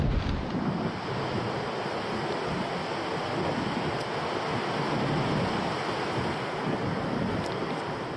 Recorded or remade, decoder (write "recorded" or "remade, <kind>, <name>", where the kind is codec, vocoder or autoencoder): recorded